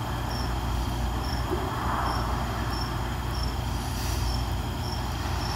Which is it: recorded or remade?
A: remade